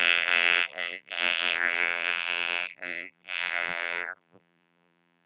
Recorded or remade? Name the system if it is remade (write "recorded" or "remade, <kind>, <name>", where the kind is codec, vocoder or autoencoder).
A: remade, vocoder, BigVGAN v2